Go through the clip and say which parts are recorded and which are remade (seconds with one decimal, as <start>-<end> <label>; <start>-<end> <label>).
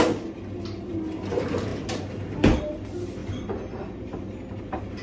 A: 0.0-5.0 recorded